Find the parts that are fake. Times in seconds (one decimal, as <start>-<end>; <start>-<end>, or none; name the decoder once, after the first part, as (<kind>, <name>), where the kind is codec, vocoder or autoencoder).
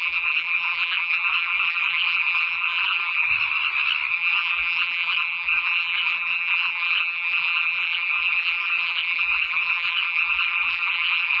0.0-3.3 (vocoder, BigVGAN v2); 4.1-11.4